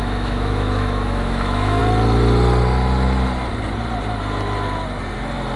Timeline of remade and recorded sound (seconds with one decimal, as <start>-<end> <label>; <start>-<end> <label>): 0.0-1.8 remade; 1.8-5.6 recorded